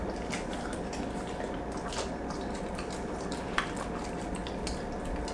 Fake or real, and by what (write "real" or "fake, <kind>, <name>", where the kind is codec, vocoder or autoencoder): real